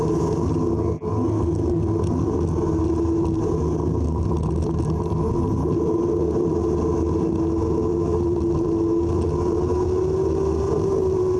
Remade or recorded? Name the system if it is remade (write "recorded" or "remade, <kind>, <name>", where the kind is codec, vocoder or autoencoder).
recorded